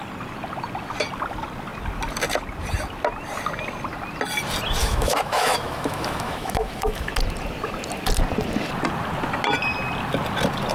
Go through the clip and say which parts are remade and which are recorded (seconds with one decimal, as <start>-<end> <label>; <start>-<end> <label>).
0.0-4.8 recorded; 4.8-7.1 remade; 7.1-10.7 recorded